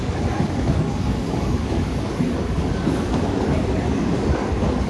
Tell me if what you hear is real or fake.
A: fake